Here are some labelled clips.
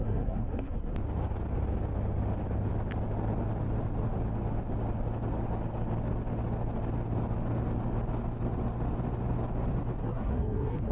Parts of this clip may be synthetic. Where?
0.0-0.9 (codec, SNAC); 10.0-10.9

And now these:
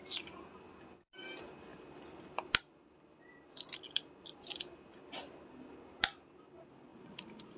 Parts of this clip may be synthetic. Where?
6.9-7.6 (vocoder, BigVGAN v2)

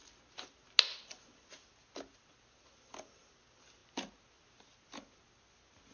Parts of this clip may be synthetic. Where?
none